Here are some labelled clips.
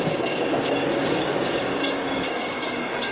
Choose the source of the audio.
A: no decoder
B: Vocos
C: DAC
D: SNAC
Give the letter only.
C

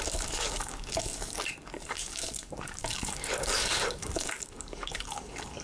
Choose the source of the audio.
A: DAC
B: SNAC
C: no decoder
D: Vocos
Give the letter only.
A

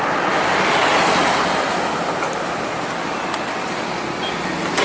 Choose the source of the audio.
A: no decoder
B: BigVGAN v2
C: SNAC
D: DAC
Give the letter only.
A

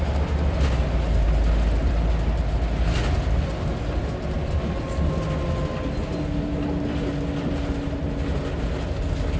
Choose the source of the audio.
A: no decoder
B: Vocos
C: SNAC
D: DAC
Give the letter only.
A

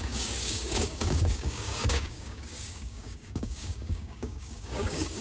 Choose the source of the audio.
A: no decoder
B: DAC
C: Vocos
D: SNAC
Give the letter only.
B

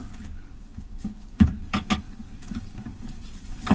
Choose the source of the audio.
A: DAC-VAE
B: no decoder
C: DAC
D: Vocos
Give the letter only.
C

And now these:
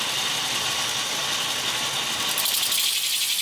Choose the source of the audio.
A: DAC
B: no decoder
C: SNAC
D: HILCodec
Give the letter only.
B